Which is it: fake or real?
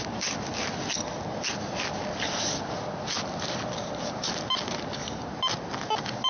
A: real